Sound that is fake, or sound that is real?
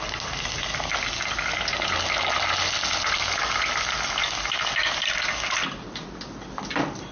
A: real